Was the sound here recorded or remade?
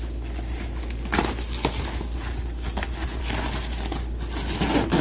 recorded